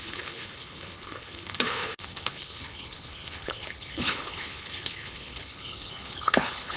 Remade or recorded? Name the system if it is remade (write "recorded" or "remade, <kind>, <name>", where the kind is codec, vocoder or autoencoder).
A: remade, codec, HILCodec